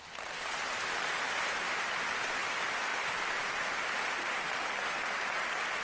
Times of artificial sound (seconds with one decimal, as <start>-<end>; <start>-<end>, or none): none